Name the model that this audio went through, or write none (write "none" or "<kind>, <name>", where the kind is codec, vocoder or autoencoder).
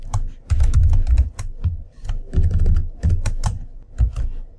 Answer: none